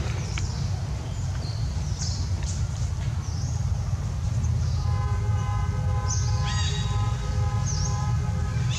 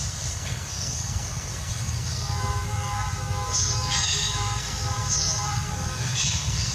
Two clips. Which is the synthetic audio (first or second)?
second